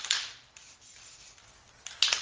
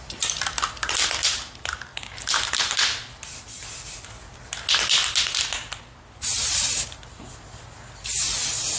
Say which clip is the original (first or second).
second